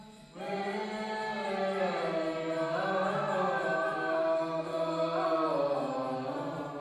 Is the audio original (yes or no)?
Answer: yes